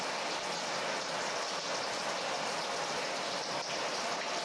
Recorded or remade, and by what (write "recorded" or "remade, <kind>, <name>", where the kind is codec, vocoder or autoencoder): recorded